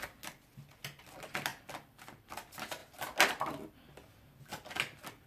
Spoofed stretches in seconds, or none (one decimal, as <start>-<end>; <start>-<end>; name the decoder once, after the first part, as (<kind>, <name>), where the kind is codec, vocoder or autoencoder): none